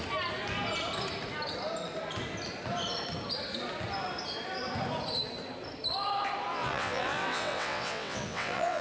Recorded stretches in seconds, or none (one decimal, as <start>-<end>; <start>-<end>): 0.0-6.5